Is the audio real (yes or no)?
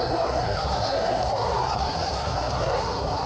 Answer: no